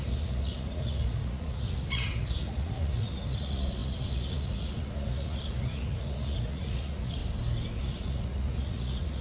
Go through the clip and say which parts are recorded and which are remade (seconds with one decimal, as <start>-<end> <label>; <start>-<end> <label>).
0.0-7.2 remade; 7.2-7.8 recorded; 7.8-9.2 remade